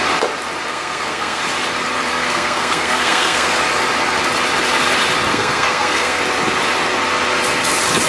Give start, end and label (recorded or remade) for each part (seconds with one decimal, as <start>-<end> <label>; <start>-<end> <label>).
0.0-0.7 recorded; 0.7-1.4 remade; 1.4-2.1 recorded; 2.1-3.6 remade; 3.6-5.3 recorded; 5.3-6.2 remade; 6.2-8.1 recorded